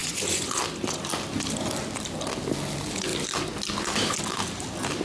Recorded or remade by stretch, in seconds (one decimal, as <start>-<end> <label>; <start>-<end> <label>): 0.0-0.6 remade; 0.6-5.0 recorded